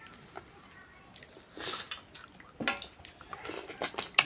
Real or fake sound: real